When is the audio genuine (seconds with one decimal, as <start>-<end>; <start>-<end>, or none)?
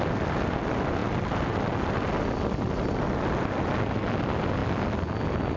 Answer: 0.0-5.6